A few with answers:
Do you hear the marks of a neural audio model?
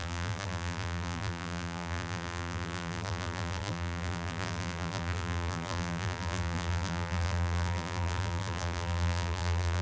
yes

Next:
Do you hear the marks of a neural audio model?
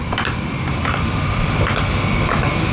no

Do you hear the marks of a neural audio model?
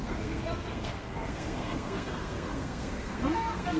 yes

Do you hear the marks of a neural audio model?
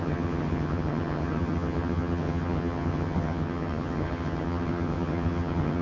yes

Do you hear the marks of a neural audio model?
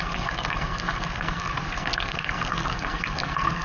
yes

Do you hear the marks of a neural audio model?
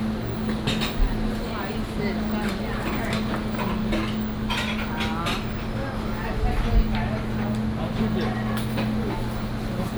no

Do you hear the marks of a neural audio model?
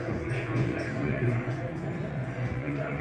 yes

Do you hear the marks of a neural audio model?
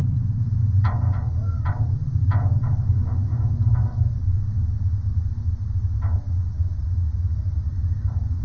no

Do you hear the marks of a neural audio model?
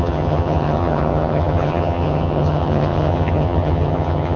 yes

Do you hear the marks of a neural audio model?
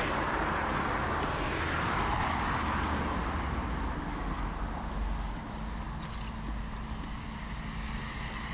no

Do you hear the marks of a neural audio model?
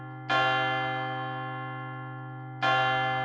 no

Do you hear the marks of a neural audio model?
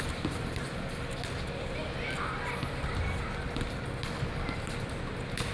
no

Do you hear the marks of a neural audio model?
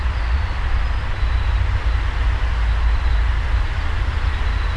no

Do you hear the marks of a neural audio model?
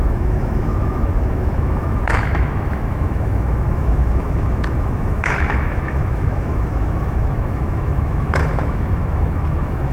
yes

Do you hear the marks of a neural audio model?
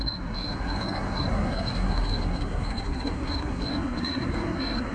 yes